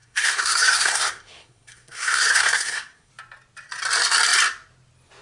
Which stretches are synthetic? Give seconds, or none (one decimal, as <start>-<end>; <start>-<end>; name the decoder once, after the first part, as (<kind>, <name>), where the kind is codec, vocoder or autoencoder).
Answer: 0.0-3.1 (codec, SNAC)

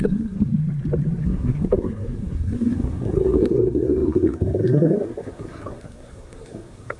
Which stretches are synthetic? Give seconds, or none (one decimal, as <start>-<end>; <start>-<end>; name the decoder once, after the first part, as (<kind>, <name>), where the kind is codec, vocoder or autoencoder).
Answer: 0.0-0.5 (codec, SNAC); 1.2-7.0

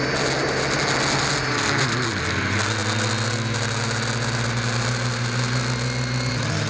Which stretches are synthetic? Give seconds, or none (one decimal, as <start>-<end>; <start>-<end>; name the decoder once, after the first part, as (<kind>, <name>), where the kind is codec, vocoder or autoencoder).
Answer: none

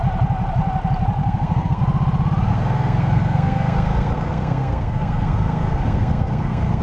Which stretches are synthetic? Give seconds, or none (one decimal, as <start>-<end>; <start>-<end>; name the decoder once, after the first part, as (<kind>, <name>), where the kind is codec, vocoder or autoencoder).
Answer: 1.2-1.8 (codec, SNAC); 2.5-6.8

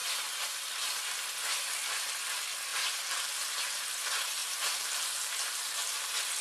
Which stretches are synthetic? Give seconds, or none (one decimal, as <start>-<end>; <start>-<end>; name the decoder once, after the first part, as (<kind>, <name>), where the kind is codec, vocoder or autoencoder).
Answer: 0.0-1.0 (vocoder, BigVGAN v2); 2.7-3.6; 4.4-6.0